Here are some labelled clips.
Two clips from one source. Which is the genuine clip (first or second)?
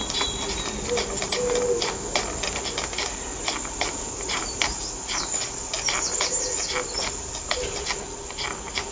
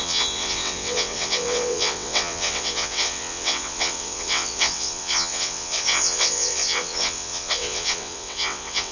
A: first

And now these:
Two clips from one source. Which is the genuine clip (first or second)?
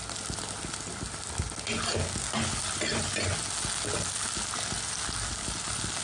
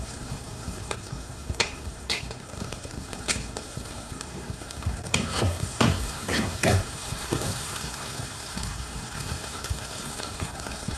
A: first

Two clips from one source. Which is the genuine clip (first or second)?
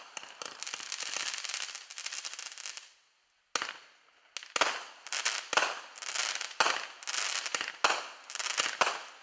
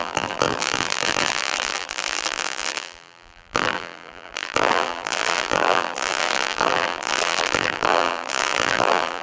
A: first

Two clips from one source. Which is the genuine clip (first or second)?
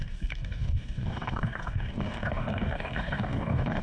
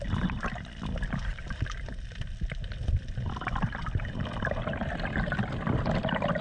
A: second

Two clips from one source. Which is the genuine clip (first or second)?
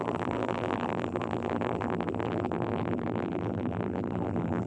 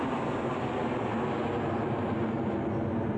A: second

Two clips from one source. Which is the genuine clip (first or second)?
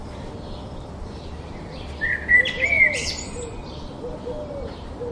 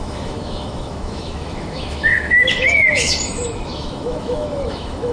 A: first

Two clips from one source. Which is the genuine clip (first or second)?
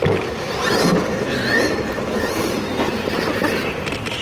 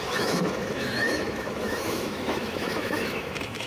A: first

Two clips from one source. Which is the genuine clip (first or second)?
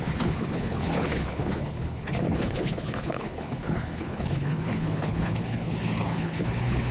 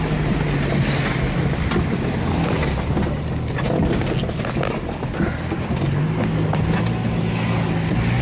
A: second